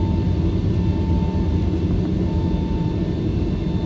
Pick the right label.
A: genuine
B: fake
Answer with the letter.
A